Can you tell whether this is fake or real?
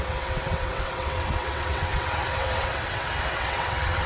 fake